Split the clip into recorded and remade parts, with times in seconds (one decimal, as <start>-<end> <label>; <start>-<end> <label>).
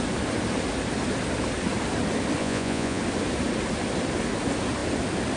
0.0-2.4 recorded; 2.4-3.0 remade; 3.0-5.4 recorded